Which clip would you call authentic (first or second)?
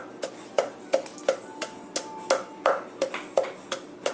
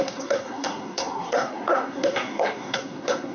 first